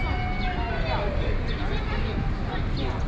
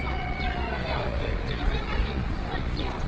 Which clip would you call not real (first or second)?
second